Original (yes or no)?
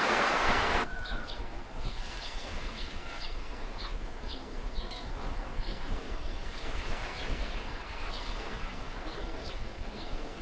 no